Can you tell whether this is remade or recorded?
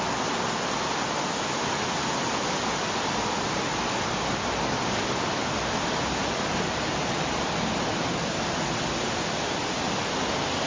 recorded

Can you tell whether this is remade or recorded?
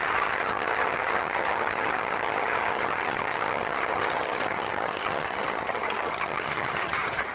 remade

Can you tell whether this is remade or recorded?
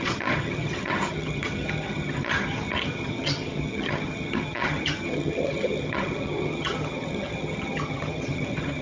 remade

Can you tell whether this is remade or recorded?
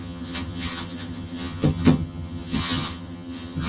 remade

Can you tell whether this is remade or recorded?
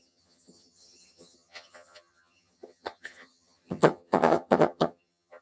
remade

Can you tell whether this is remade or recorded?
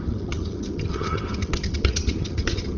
remade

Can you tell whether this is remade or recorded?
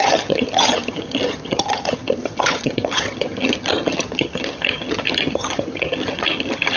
remade